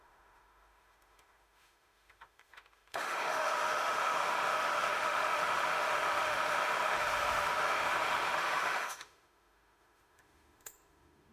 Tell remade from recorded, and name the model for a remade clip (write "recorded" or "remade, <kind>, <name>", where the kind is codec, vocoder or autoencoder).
remade, autoencoder, DAC-VAE